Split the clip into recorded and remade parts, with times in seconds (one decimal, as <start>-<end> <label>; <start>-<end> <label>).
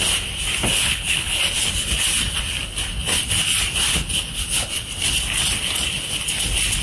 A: 0.0-0.8 recorded; 0.8-1.4 remade; 1.4-6.8 recorded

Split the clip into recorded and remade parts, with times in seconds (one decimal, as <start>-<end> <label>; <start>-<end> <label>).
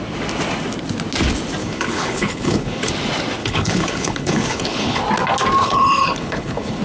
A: 0.0-1.6 recorded; 1.6-2.9 remade; 2.9-3.4 recorded; 3.4-5.0 remade; 5.0-5.6 recorded; 5.6-6.8 remade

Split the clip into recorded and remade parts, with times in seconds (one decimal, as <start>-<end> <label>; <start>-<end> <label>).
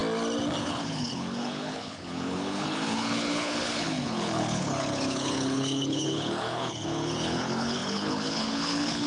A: 0.0-0.6 recorded; 0.6-9.1 remade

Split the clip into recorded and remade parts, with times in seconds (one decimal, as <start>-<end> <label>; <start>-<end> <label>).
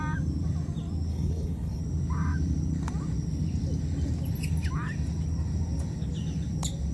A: 0.0-1.1 recorded; 1.1-1.8 remade; 1.8-6.9 recorded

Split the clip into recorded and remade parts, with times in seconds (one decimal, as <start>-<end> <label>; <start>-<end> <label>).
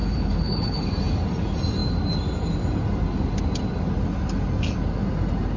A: 0.0-0.9 remade; 0.9-5.6 recorded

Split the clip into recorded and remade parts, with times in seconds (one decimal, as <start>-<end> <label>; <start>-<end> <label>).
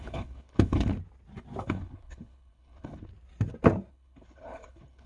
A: 0.0-0.9 remade; 0.9-1.6 recorded; 1.6-3.1 remade; 3.1-3.9 recorded; 3.9-5.1 remade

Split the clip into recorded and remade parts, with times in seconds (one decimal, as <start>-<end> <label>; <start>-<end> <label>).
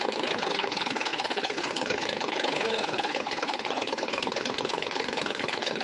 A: 0.0-5.8 remade